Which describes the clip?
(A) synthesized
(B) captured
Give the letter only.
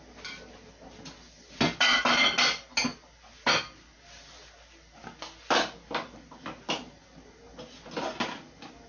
B